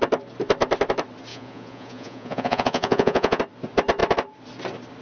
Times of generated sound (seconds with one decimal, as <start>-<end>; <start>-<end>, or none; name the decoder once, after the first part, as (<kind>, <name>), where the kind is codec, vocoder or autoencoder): 1.3-3.4 (vocoder, Vocos)